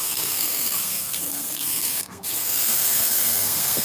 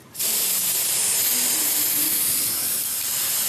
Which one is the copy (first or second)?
first